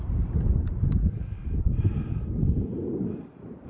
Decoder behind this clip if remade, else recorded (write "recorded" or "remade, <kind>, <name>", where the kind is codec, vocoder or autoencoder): recorded